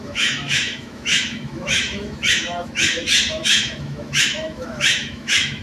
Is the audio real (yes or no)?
no